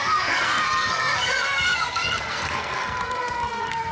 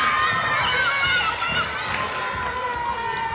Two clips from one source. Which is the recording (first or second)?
second